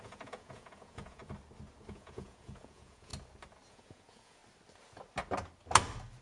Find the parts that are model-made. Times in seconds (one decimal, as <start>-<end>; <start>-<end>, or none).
0.0-1.2; 1.9-3.1; 3.7-4.4

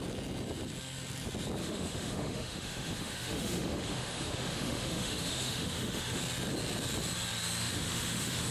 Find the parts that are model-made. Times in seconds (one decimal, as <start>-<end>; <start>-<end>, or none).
1.6-6.2; 7.6-8.5

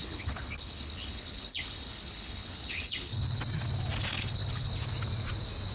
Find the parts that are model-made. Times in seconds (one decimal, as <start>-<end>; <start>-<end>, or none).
0.0-3.4; 4.1-4.7